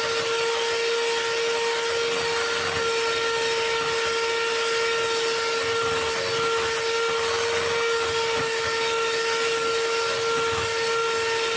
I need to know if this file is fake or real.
real